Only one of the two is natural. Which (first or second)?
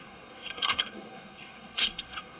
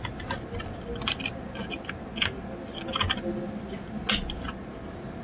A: second